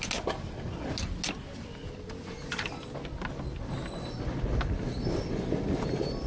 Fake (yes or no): no